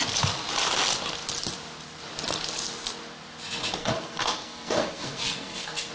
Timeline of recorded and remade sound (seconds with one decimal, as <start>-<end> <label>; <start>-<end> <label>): 0.0-3.8 recorded; 3.8-5.9 remade